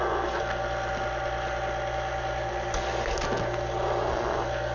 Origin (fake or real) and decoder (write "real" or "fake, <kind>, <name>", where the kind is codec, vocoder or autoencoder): real